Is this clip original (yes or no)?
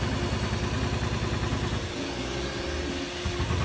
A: yes